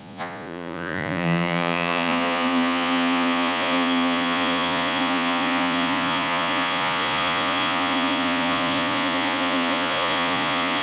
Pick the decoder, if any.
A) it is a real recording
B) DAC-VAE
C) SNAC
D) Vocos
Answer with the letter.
D